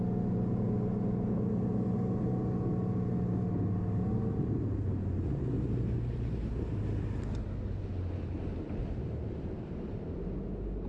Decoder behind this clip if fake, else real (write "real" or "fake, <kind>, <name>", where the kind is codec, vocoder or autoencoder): real